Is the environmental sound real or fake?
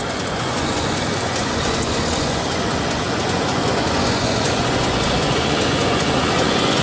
fake